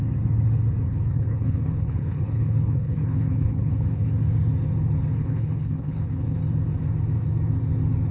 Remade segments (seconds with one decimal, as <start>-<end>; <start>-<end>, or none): 0.9-4.0; 5.2-6.4